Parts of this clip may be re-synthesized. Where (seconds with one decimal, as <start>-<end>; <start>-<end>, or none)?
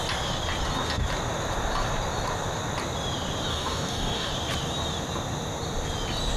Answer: 3.5-4.3